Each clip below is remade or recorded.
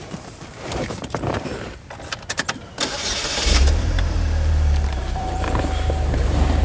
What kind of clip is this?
remade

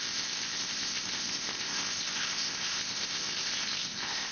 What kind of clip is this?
remade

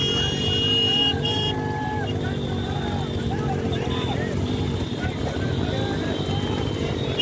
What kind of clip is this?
recorded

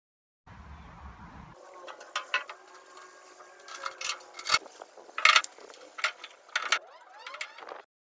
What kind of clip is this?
recorded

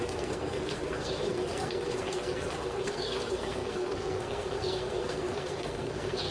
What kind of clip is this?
remade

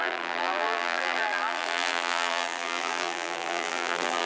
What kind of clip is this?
remade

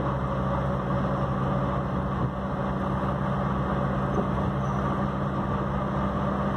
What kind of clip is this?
recorded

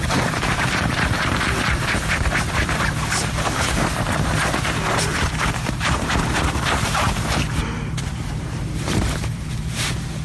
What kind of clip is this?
remade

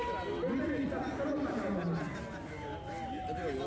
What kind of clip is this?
recorded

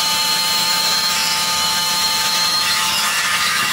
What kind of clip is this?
remade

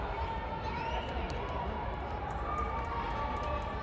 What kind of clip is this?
recorded